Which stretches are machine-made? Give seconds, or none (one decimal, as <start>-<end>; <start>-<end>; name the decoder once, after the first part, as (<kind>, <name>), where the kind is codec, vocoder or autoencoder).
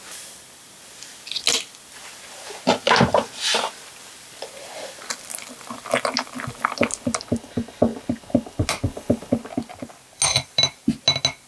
none